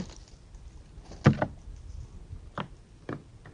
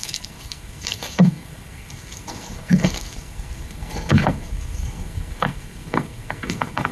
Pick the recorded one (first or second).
first